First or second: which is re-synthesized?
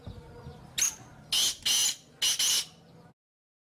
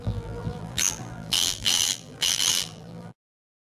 second